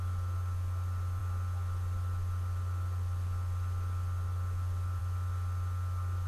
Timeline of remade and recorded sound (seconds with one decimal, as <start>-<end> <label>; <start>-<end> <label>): 0.0-6.3 recorded